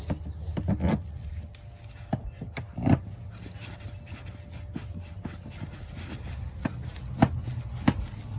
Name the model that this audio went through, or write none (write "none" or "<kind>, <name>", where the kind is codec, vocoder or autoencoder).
none